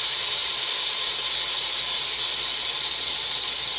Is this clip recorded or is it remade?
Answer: recorded